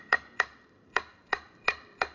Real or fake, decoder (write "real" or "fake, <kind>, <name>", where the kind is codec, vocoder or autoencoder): fake, vocoder, BigVGAN v2